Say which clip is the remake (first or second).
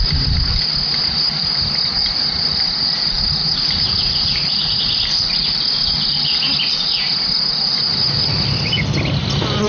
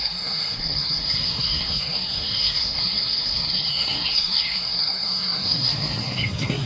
second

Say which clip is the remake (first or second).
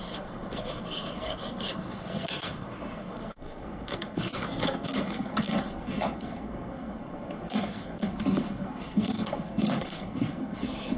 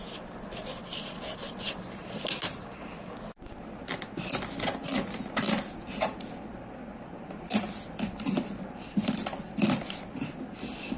first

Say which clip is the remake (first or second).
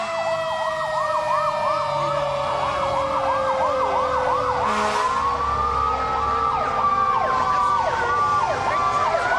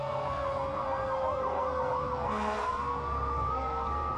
second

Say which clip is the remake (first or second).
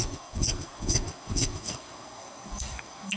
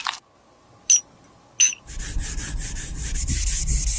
first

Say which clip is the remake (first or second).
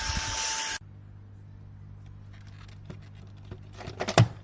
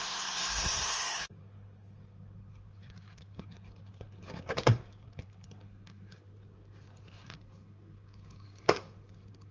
second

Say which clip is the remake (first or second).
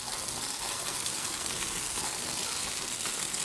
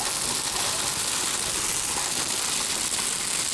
first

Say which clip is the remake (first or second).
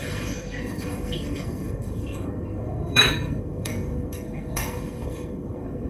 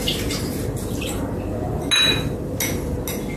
first